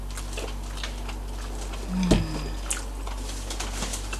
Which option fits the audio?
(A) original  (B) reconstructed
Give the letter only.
A